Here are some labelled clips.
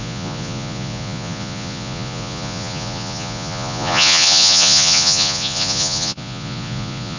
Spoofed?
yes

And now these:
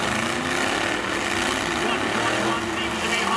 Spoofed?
no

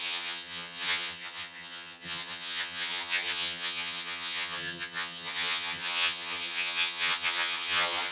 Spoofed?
yes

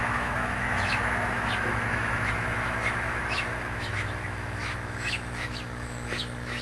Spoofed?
yes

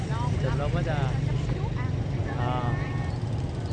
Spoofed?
no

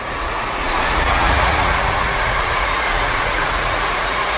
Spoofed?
yes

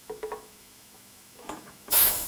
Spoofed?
yes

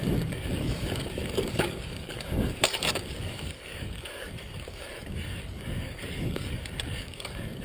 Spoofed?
yes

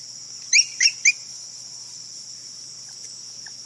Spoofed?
no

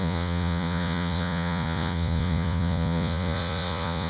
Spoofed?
yes